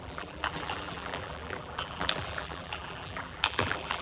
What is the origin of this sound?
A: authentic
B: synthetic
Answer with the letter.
B